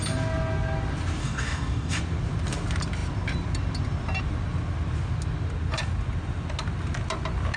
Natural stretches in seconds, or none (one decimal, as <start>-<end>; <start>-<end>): 0.0-1.2; 2.0-7.6